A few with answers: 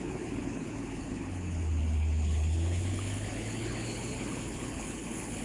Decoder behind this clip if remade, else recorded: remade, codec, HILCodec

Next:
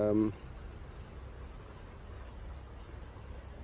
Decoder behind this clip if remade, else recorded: recorded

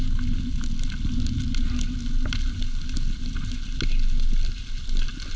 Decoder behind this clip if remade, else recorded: recorded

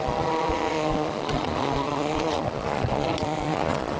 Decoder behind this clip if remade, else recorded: remade, vocoder, Vocos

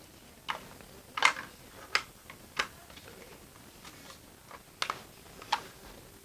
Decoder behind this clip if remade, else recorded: recorded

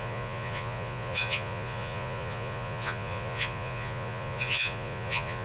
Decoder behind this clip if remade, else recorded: remade, vocoder, Vocos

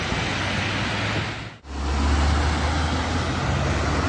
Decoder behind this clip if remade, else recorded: recorded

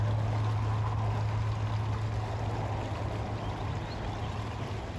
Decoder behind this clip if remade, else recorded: recorded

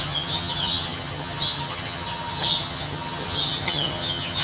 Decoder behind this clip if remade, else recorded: remade, vocoder, HiFi-GAN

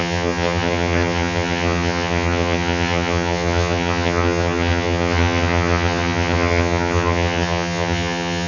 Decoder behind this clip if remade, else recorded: remade, vocoder, HiFi-GAN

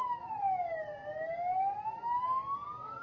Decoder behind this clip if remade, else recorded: recorded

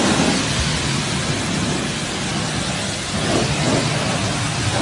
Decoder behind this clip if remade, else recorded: recorded